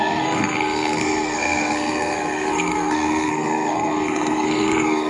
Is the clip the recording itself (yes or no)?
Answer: no